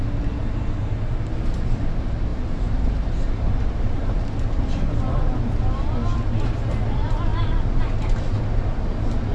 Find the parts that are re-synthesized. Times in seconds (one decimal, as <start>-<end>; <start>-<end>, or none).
2.3-5.3